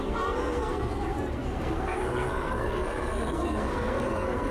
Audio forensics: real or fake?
fake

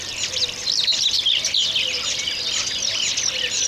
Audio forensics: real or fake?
real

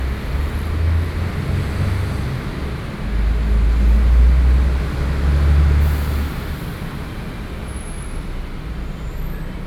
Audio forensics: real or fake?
real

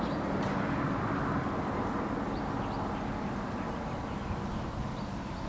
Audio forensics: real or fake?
real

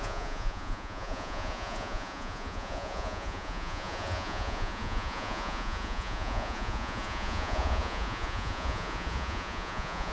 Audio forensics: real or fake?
fake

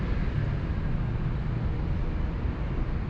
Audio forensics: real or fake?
real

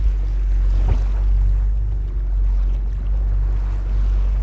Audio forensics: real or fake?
real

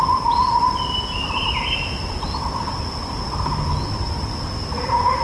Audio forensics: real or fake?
real